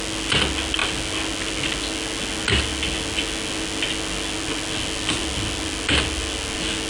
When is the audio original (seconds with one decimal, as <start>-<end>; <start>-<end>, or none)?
0.0-6.9

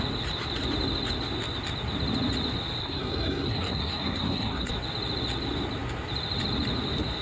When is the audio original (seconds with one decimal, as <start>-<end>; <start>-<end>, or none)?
0.0-2.8; 4.7-7.2